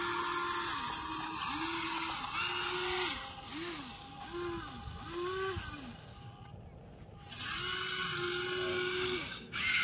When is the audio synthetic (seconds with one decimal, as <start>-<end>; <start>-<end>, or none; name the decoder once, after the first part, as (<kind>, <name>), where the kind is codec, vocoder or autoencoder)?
8.7-9.8 (codec, DAC)